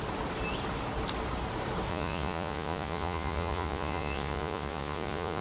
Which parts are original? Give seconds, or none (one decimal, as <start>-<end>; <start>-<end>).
0.0-1.9